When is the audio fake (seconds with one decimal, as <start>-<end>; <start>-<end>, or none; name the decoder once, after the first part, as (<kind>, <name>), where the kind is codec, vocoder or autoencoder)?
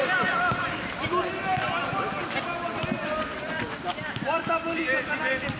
none